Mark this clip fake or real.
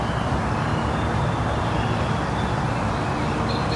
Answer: real